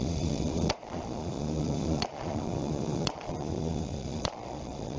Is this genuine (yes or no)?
no